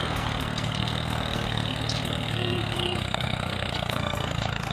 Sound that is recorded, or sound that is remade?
remade